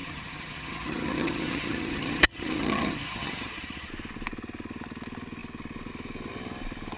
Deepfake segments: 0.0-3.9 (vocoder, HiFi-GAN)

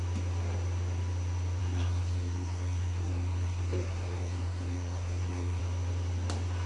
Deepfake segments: 1.6-5.6 (codec, SNAC)

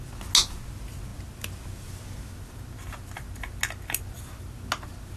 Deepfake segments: none